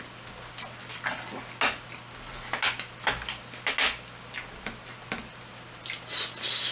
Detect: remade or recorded recorded